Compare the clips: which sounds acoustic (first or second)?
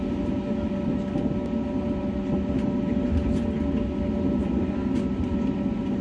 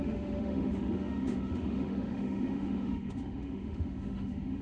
first